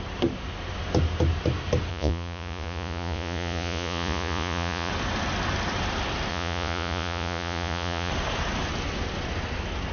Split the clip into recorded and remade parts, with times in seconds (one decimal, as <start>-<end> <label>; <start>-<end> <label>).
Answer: 0.0-1.9 recorded; 1.9-4.9 remade; 4.9-6.3 recorded; 6.3-8.1 remade; 8.1-9.9 recorded